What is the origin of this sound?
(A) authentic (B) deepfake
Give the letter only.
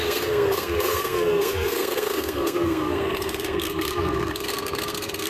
B